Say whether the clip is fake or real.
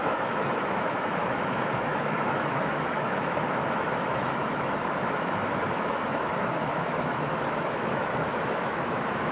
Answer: fake